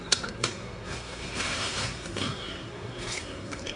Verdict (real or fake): fake